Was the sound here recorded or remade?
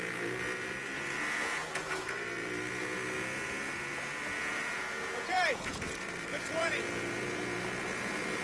remade